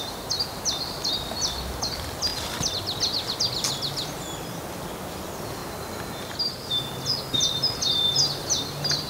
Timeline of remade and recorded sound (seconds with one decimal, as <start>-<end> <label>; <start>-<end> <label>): 0.0-9.1 recorded